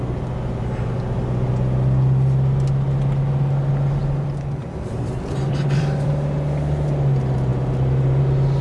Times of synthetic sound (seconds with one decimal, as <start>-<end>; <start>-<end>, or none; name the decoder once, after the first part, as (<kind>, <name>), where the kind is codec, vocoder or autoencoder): 4.0-6.1 (vocoder, BigVGAN v2)